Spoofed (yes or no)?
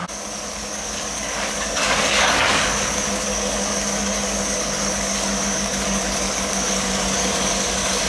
yes